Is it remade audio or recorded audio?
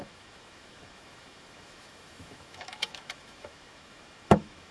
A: remade